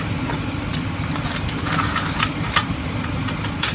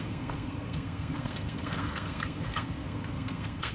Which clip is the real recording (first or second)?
first